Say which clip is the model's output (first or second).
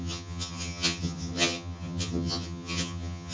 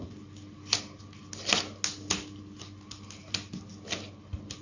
first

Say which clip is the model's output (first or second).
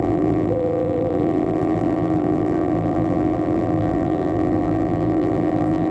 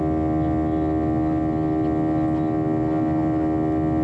first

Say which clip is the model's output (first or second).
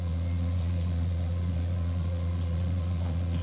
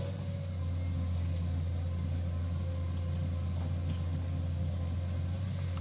first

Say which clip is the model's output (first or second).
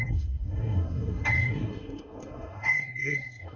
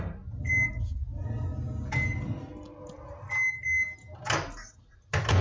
first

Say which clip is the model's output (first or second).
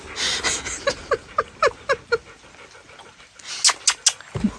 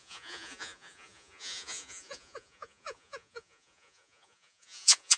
second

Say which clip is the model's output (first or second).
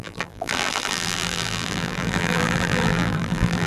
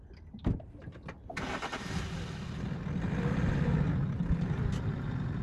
first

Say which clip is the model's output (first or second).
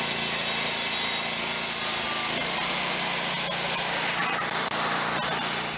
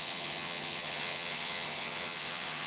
second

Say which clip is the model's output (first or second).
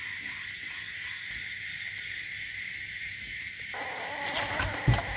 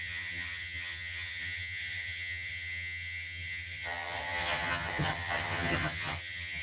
second